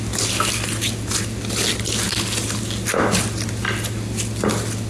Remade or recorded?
recorded